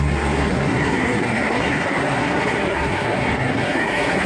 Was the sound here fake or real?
fake